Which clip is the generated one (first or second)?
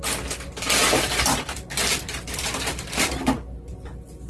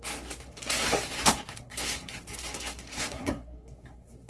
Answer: second